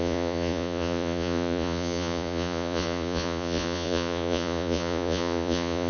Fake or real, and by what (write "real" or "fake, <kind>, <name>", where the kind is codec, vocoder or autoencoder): fake, vocoder, Vocos